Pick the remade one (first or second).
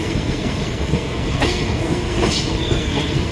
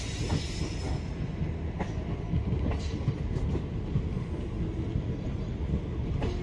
first